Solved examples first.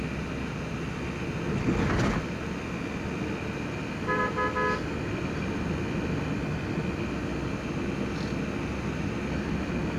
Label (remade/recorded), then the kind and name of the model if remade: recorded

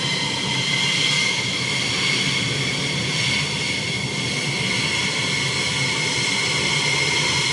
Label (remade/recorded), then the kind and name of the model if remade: recorded